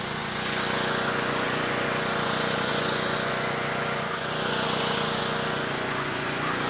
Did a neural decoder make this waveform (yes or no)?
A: yes